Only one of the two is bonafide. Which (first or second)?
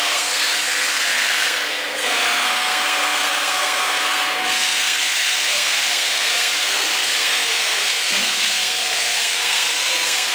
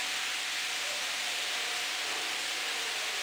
second